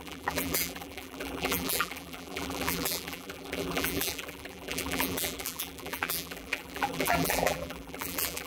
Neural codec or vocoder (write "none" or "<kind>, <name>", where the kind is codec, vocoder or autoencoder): vocoder, BigVGAN v2